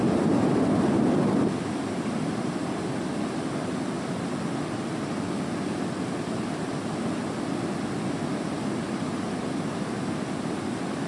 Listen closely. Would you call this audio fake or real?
real